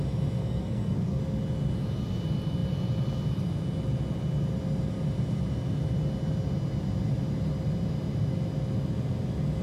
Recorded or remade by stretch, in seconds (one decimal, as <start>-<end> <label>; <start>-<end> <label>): 0.0-0.4 recorded; 0.4-1.2 remade; 1.2-9.6 recorded